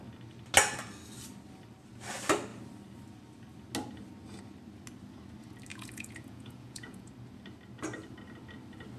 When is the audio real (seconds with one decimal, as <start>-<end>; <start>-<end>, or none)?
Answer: 0.0-5.7; 7.1-9.0